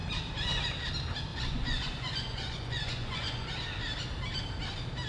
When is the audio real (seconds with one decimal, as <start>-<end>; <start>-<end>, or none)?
0.0-1.3; 3.5-5.1